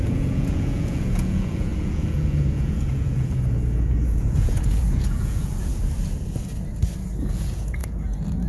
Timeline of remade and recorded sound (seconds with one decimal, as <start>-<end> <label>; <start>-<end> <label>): 0.0-5.7 remade; 5.7-7.3 recorded; 7.3-8.5 remade